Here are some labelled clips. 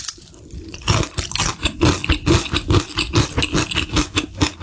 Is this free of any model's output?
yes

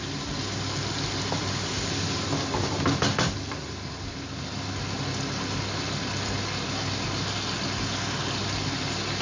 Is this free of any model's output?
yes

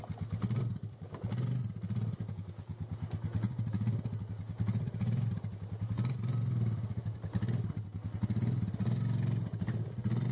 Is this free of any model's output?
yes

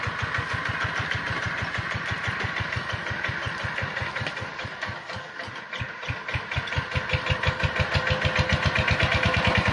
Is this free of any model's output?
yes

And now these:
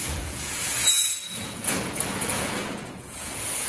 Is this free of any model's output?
no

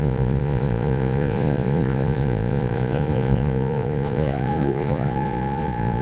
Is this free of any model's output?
no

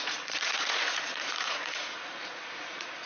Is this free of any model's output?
no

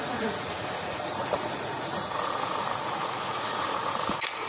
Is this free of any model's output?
no